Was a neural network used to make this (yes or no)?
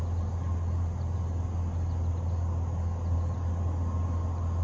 no